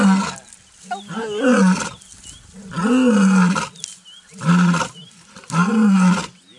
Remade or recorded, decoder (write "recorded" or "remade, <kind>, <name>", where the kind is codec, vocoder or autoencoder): recorded